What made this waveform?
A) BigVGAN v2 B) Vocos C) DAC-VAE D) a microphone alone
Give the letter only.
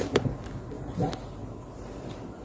D